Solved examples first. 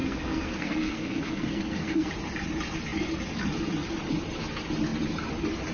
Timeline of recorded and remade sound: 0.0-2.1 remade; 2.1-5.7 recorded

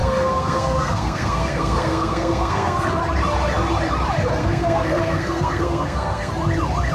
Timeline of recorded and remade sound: 0.0-3.0 remade; 3.0-4.4 recorded; 4.4-6.3 remade; 6.3-6.9 recorded

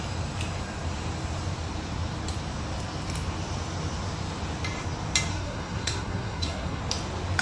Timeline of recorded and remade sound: 0.0-5.3 recorded; 5.3-6.8 remade; 6.8-7.4 recorded

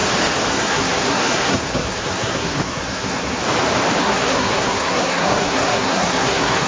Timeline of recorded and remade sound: 0.0-0.5 recorded; 0.5-3.4 remade; 3.4-4.0 recorded; 4.0-6.7 remade